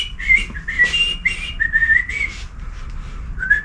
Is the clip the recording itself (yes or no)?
yes